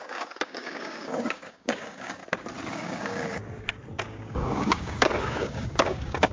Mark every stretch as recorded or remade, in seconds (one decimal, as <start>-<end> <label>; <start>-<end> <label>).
0.0-2.2 remade; 2.2-2.7 recorded; 2.7-3.4 remade; 3.4-4.0 recorded; 4.0-6.3 remade